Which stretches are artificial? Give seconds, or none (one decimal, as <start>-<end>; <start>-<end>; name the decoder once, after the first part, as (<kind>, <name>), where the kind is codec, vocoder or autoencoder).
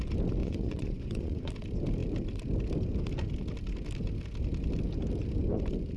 0.4-1.5 (vocoder, Vocos)